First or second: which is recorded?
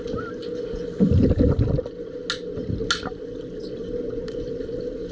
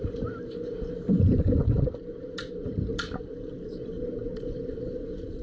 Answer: first